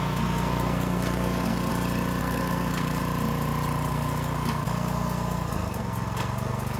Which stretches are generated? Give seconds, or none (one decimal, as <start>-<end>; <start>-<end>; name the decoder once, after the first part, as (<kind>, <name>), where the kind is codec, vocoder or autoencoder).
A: 0.0-1.7 (codec, SNAC); 2.2-3.0; 3.9-6.8